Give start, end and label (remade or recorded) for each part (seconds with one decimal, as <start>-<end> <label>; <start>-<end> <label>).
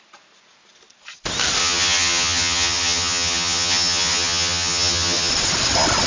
0.0-1.6 recorded; 1.6-5.3 remade; 5.3-6.1 recorded